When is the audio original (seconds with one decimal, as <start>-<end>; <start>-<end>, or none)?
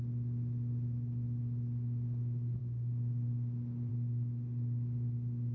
0.0-5.5